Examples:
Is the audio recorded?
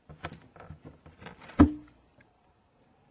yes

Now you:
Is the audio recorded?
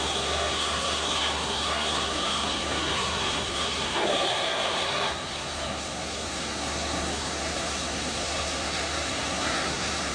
no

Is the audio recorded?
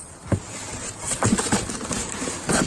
yes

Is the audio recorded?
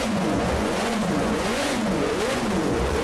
no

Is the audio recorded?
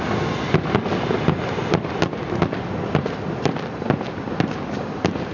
yes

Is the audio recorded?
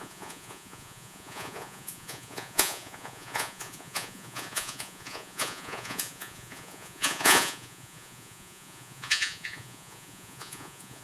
no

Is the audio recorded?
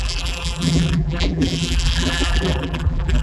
no